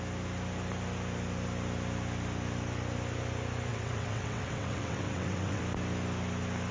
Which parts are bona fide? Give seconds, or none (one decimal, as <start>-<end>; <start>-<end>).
0.0-3.7; 5.6-6.7

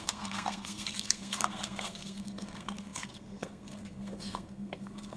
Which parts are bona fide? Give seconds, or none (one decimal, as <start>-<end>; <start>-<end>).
none

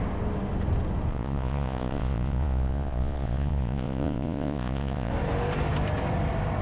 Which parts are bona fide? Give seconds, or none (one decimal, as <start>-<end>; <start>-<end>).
0.0-1.1; 5.1-6.6

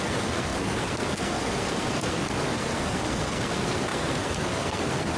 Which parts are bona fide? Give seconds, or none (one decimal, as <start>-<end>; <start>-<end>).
none